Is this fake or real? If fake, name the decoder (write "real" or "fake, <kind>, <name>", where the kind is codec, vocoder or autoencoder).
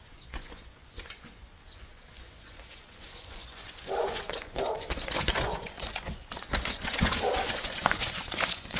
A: fake, vocoder, Vocos